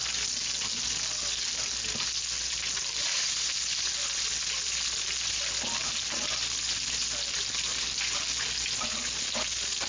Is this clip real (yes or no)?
yes